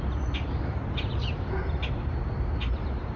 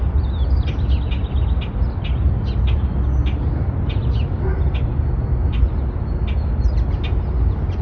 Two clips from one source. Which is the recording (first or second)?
second